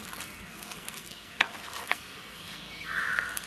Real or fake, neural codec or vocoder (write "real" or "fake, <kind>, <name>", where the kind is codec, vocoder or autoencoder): fake, codec, SNAC